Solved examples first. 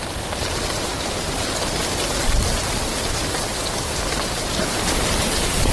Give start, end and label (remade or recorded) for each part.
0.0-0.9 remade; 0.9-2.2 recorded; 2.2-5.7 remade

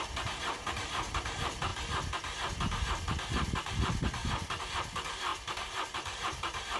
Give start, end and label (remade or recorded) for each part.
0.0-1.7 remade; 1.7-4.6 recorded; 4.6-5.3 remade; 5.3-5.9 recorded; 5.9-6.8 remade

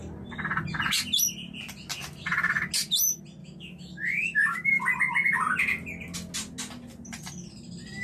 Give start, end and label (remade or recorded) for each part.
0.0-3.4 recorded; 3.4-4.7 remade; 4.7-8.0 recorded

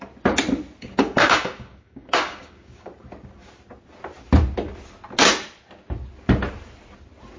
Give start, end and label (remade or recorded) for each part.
0.0-0.8 recorded; 0.8-2.9 remade; 2.9-7.4 recorded

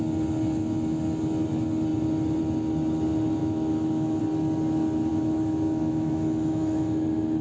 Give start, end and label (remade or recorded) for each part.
0.0-3.4 recorded; 3.4-4.2 remade; 4.2-5.1 recorded; 5.1-7.4 remade

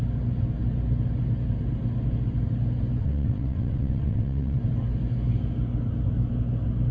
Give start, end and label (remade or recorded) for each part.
0.0-3.0 recorded; 3.0-4.6 remade; 4.6-6.9 recorded

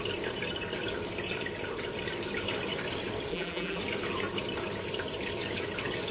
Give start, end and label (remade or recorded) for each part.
0.0-3.3 recorded; 3.3-3.8 remade; 3.8-6.1 recorded